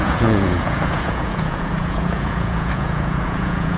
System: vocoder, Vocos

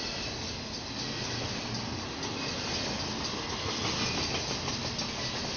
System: none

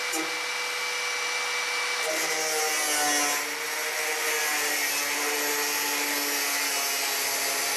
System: none